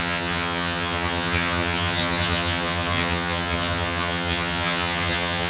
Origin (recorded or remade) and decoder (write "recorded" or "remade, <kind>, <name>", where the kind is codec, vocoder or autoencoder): remade, vocoder, HiFi-GAN